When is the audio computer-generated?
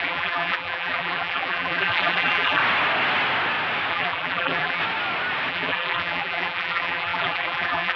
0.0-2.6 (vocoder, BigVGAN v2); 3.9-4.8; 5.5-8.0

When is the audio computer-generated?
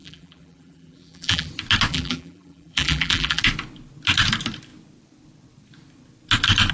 0.0-1.5 (vocoder, BigVGAN v2); 1.9-3.4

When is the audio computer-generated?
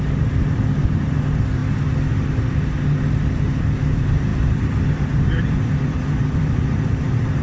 0.0-1.6 (vocoder, BigVGAN v2); 3.0-7.4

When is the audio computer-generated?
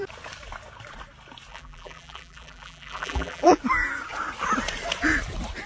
1.5-3.6 (vocoder, BigVGAN v2)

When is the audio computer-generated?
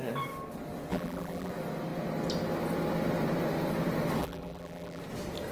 0.9-1.5 (vocoder, BigVGAN v2); 4.2-5.0